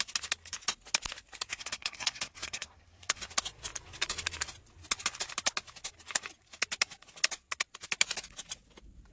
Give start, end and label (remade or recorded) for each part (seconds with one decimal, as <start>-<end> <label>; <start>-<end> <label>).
0.0-1.5 recorded; 1.5-3.2 remade; 3.2-9.1 recorded